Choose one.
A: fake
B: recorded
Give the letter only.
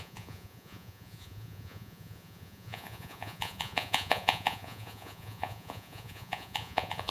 A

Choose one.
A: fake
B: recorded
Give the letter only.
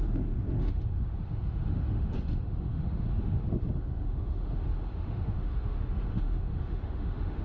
A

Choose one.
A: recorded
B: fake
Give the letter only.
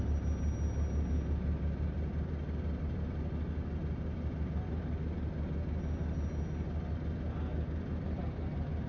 A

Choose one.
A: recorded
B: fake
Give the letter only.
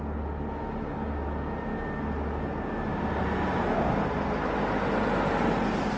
A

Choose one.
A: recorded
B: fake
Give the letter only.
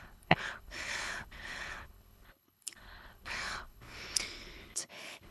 B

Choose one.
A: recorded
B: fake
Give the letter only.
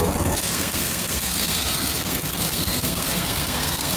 B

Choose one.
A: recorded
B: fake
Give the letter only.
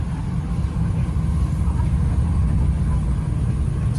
A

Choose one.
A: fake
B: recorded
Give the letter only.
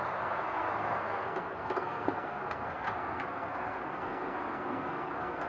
A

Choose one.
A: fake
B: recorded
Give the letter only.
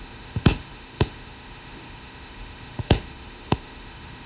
A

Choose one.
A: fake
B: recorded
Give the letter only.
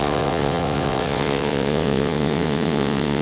A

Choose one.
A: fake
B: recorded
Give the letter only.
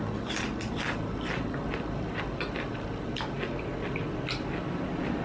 B